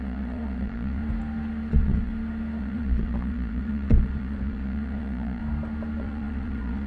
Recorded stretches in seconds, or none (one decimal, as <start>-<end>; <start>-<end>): 1.0-1.7; 2.1-2.6; 5.4-6.0

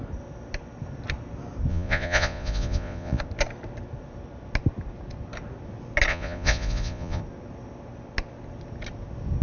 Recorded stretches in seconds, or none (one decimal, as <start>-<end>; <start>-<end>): 0.0-1.7; 3.2-6.1; 7.2-9.4